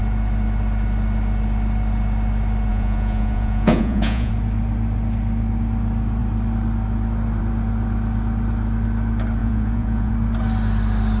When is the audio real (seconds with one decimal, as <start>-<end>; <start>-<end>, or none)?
0.0-2.7; 4.3-9.4; 10.1-11.2